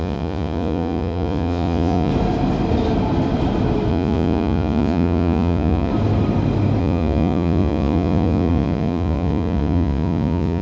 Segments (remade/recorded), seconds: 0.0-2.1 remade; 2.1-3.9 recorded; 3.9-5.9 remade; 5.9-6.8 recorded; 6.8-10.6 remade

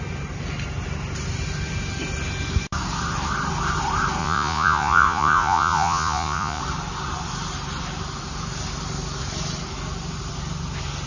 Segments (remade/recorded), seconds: 0.0-4.2 recorded; 4.2-6.6 remade; 6.6-11.1 recorded

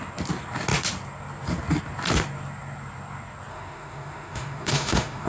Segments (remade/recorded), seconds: 0.0-3.5 recorded; 3.5-5.3 remade

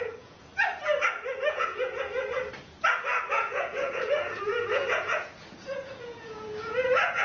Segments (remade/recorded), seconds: 0.0-0.5 remade; 0.5-1.5 recorded; 1.5-2.1 remade; 2.1-3.3 recorded; 3.3-7.2 remade

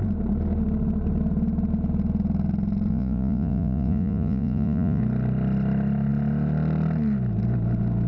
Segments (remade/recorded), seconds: 0.0-2.9 recorded; 2.9-5.0 remade; 5.0-8.1 recorded

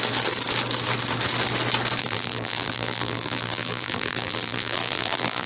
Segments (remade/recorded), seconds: 0.0-2.0 recorded; 2.0-5.5 remade

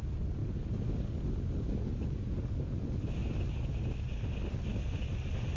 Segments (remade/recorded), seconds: 0.0-5.6 recorded